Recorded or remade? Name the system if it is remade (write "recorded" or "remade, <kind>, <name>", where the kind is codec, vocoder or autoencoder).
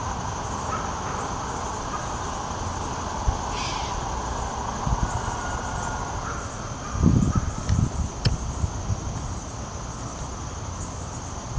recorded